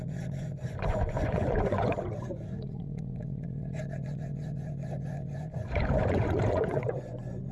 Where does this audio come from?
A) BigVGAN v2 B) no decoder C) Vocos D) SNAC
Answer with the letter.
C